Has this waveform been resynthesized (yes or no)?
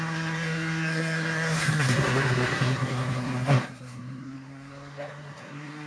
yes